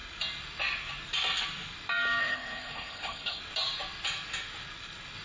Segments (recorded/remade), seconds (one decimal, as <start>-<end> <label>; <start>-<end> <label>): 0.0-2.2 recorded; 2.2-3.4 remade; 3.4-5.2 recorded